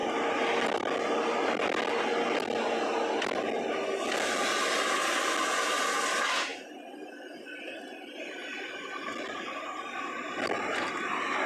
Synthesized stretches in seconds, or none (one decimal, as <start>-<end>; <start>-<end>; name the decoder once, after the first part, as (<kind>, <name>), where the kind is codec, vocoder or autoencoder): none